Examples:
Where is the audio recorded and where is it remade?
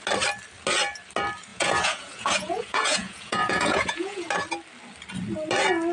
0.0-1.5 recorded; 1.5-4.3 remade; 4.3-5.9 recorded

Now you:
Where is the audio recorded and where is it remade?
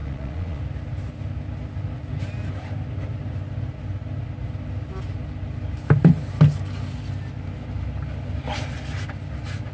0.0-0.6 remade; 0.6-9.7 recorded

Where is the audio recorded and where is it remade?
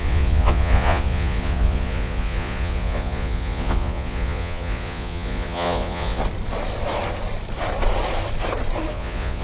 0.0-6.2 remade; 6.2-8.9 recorded; 8.9-9.4 remade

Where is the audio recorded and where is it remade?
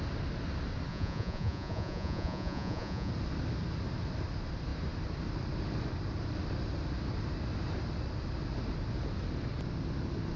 0.0-0.9 recorded; 0.9-3.1 remade; 3.1-10.4 recorded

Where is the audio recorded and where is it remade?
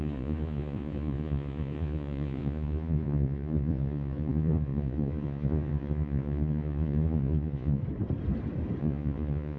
0.0-7.8 remade; 7.8-8.8 recorded; 8.8-9.6 remade